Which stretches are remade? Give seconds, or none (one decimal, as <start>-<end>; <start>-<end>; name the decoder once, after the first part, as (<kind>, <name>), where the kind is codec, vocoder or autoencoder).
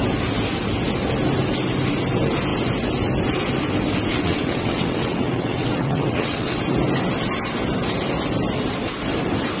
4.1-6.6 (vocoder, WaveNeXt)